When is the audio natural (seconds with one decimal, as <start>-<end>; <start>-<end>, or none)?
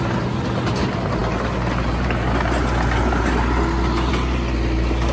0.0-5.1